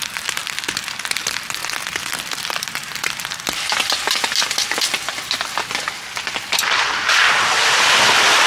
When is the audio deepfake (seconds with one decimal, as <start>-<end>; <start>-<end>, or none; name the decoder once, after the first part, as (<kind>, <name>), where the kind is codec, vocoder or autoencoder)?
0.0-8.5 (vocoder, BigVGAN v2)